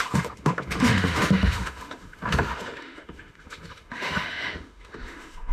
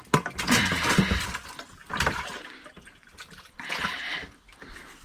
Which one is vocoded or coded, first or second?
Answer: first